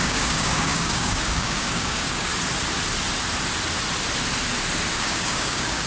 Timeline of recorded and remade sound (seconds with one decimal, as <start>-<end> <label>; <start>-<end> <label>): 0.0-2.3 remade; 2.3-4.9 recorded; 4.9-5.9 remade